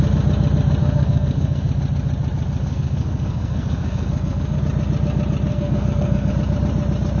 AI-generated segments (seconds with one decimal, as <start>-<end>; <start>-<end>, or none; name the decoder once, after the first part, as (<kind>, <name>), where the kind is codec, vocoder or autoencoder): 0.8-1.7 (codec, SNAC); 2.7-4.6; 5.5-6.3

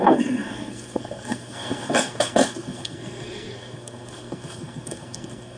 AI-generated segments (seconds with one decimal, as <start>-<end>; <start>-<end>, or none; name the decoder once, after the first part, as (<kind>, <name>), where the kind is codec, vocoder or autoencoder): 0.0-5.6 (codec, SNAC)